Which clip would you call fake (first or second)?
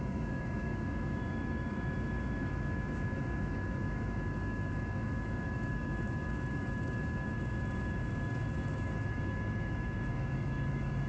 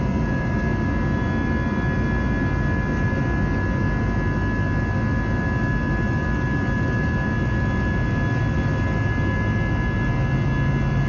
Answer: first